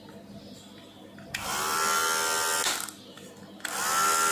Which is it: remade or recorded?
recorded